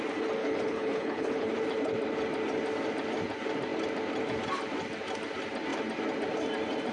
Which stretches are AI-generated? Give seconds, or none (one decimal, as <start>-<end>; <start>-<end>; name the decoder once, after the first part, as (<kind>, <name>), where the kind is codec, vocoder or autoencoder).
0.4-1.5 (codec, HILCodec)